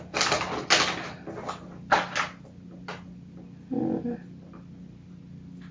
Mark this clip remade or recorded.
recorded